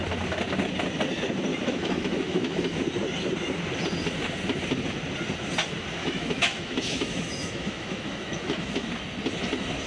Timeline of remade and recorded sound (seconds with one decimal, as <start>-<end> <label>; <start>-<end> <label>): 0.0-1.5 recorded; 1.5-2.8 remade; 2.8-6.0 recorded; 6.0-8.9 remade; 8.9-9.9 recorded